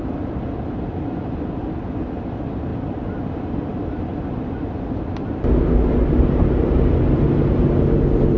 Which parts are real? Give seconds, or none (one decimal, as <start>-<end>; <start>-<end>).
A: 0.0-8.4

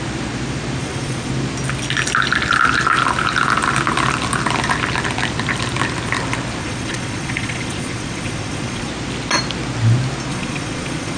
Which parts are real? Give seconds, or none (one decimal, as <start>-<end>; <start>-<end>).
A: 0.0-0.8; 1.3-6.6; 8.9-10.3

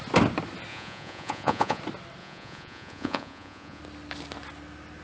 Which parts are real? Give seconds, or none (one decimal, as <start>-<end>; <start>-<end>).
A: 0.0-0.7; 1.8-2.2; 3.8-5.0

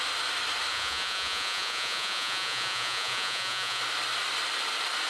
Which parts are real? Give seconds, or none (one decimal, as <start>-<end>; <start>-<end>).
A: 0.0-0.7; 3.8-5.1